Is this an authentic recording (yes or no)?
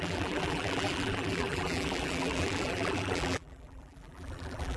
no